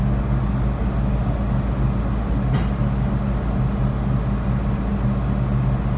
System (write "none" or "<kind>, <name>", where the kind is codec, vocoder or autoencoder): none